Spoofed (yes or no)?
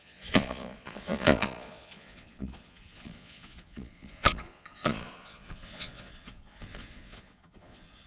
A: yes